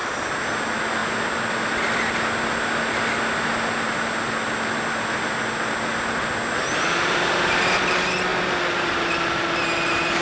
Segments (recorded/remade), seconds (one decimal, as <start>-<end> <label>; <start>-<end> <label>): 0.0-10.2 recorded